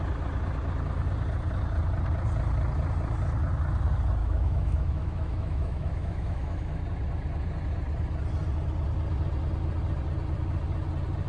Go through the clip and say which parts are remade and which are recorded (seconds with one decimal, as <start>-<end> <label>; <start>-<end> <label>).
0.0-4.2 recorded; 4.2-6.8 remade; 6.8-11.3 recorded